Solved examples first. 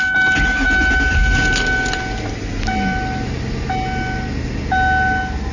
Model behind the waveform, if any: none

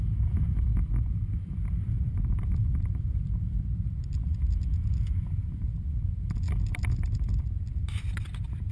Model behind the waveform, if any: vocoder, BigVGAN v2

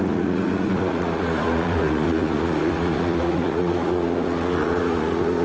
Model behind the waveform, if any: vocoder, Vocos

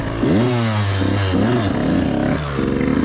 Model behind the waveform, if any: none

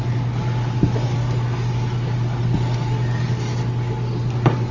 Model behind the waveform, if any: none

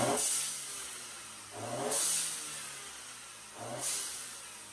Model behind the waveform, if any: none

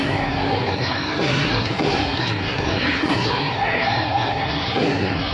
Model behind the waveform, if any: codec, SNAC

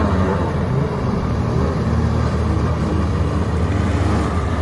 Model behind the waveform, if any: vocoder, BigVGAN v2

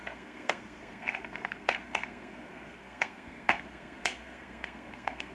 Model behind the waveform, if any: codec, SNAC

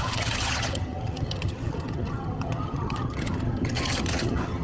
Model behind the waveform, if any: vocoder, HiFi-GAN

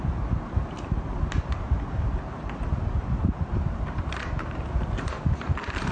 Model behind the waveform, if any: vocoder, BigVGAN v2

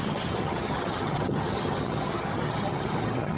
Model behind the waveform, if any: vocoder, HiFi-GAN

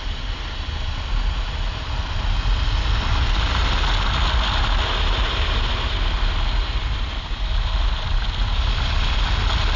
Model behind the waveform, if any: none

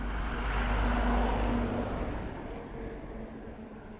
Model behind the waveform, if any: none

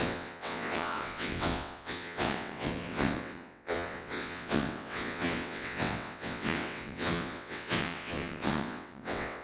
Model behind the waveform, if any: vocoder, WaveNeXt